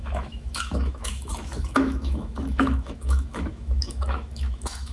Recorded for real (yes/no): no